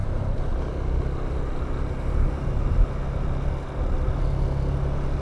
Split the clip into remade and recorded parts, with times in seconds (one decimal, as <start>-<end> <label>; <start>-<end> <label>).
0.0-5.2 recorded